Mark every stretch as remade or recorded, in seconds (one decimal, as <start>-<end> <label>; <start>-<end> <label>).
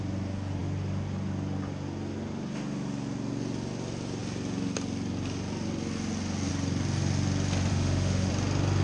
0.0-7.7 recorded; 7.7-8.3 remade; 8.3-8.8 recorded